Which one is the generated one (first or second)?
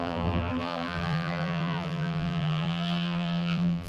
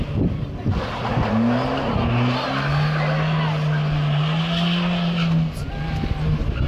first